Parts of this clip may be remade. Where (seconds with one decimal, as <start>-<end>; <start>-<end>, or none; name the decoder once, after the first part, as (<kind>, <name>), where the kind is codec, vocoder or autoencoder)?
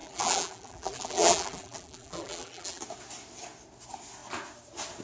0.0-2.8 (vocoder, BigVGAN v2)